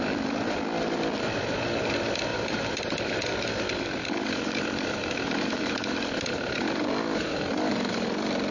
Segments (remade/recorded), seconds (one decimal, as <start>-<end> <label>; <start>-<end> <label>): 0.0-2.3 recorded; 2.3-3.3 remade; 3.3-5.0 recorded; 5.0-7.9 remade; 7.9-8.5 recorded